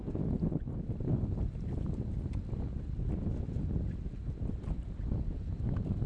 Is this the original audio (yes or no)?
yes